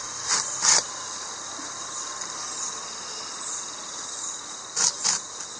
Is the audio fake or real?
real